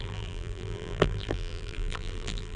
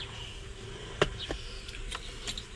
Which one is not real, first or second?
first